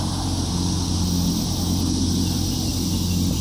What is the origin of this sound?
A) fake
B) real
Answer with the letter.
B